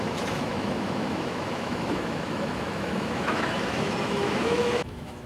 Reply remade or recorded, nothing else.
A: remade